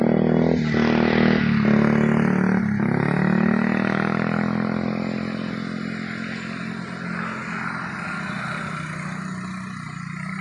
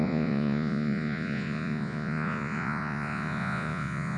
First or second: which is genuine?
first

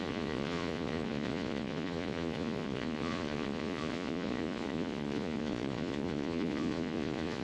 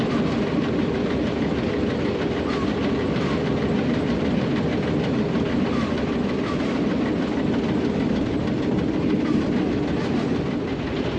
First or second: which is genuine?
second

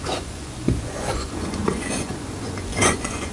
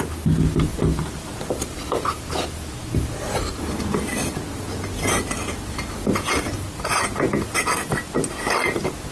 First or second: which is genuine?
second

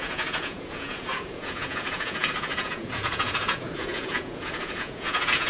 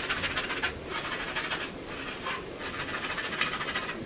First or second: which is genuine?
second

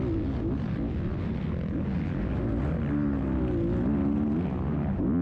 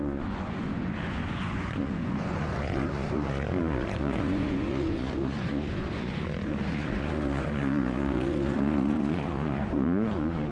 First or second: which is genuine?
first